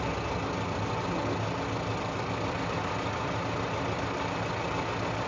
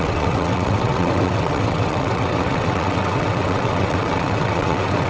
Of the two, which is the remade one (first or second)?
second